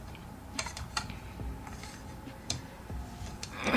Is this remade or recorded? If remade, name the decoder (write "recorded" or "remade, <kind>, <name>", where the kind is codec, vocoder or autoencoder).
remade, vocoder, BigVGAN v2